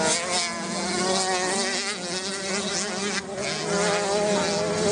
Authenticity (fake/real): real